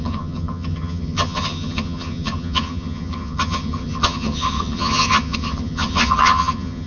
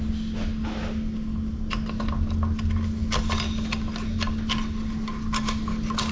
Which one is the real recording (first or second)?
second